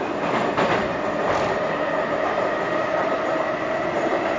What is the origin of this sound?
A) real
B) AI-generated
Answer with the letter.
A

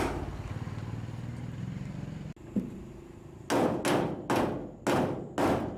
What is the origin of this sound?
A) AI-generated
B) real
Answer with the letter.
B